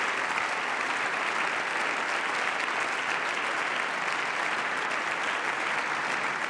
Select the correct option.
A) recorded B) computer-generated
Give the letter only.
A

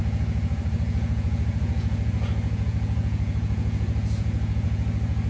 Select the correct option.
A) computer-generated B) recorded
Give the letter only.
A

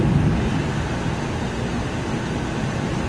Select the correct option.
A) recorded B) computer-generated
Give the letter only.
A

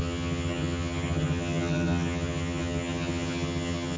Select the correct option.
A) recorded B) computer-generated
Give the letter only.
B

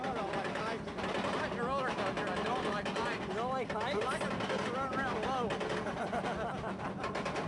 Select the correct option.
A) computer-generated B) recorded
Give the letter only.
B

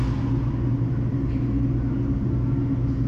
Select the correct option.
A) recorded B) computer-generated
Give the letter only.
A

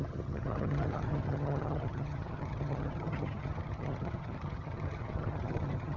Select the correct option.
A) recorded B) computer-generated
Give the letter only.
B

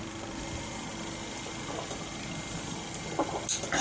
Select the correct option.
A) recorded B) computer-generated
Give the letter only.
A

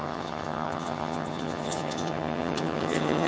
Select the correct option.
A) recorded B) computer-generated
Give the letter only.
B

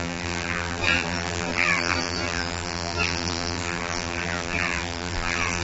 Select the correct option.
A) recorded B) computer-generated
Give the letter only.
B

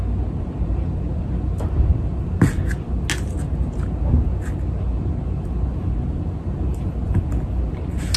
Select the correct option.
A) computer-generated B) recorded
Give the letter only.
B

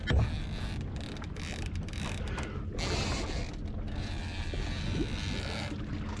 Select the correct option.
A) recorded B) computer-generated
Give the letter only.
A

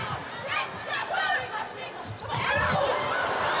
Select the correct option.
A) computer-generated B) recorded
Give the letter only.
B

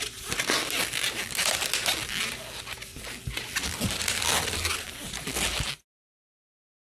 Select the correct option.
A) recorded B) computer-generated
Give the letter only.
A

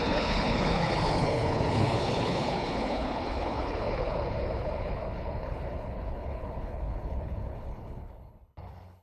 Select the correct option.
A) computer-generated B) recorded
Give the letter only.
A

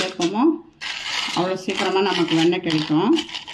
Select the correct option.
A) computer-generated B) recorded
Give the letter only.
B